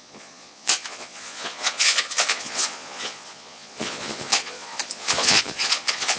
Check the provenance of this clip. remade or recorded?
remade